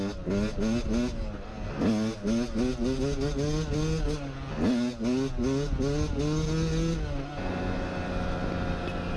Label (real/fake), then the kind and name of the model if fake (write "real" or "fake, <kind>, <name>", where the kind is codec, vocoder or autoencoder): real